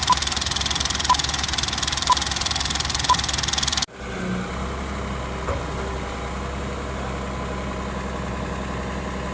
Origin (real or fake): real